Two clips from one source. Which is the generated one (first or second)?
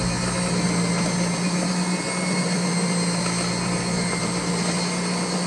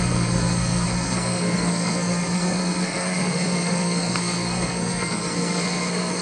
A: second